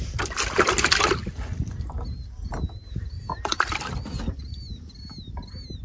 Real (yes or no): yes